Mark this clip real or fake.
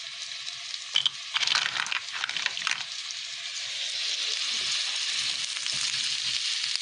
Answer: real